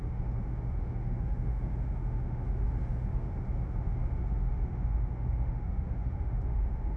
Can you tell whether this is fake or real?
fake